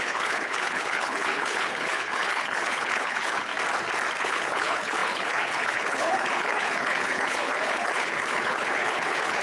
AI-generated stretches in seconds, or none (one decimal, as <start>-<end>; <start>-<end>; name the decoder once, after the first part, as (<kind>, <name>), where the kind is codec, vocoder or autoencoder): 0.0-3.5 (codec, HILCodec); 4.2-9.4